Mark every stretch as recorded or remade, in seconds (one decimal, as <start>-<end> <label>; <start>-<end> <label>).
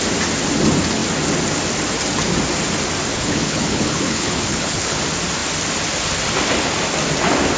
0.0-3.1 recorded; 3.1-5.0 remade; 5.0-7.6 recorded